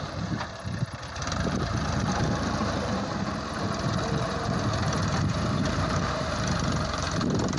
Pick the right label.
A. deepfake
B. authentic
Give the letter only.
A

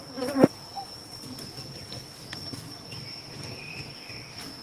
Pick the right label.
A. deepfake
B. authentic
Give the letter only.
B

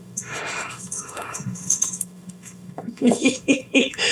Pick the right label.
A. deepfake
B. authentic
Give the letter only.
A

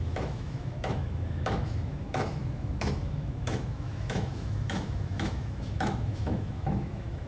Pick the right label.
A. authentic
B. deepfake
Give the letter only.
B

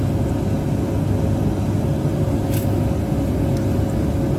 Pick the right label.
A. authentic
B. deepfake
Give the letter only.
A